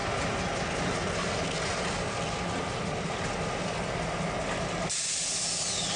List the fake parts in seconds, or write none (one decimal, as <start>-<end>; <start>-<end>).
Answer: none